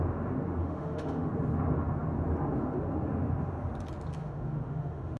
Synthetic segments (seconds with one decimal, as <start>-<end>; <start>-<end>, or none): 0.6-1.3; 4.2-5.2